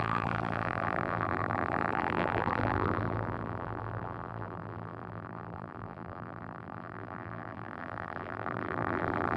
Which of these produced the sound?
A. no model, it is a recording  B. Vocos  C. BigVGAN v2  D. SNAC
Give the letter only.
C